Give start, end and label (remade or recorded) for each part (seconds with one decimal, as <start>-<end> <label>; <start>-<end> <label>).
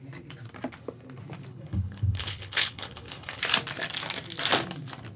0.0-1.5 recorded; 1.5-3.4 remade; 3.4-5.2 recorded